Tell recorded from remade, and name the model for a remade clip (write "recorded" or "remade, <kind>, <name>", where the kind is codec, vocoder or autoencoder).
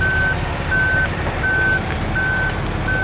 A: recorded